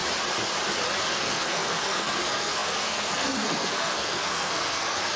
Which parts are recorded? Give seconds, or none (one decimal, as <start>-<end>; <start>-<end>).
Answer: 0.0-1.0